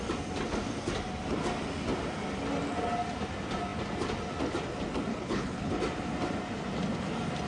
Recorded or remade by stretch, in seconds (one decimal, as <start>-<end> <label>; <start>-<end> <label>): 0.0-5.1 recorded; 5.1-5.8 remade; 5.8-7.5 recorded